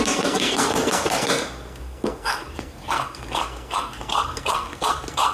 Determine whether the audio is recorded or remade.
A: remade